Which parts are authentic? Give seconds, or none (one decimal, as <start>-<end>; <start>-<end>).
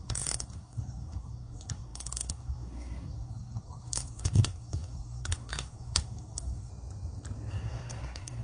6.7-7.5